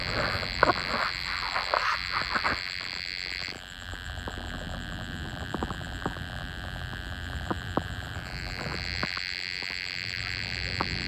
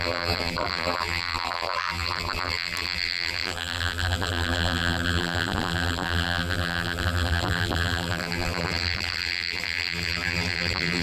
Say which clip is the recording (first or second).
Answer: first